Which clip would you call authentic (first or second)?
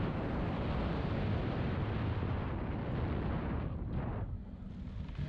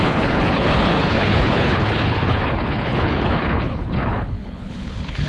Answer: first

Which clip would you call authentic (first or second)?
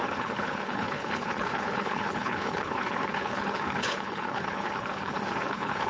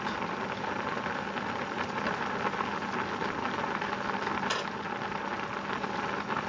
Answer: second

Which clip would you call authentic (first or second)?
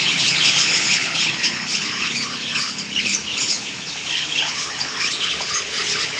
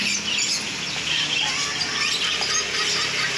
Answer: second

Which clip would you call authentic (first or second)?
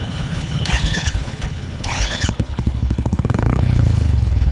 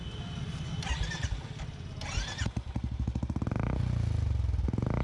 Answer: second